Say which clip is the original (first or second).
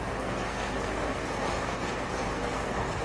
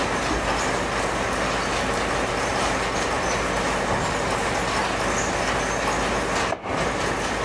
second